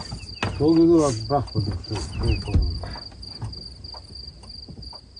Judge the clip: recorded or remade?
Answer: recorded